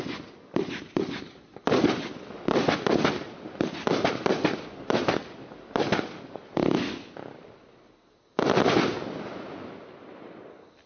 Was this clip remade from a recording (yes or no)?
no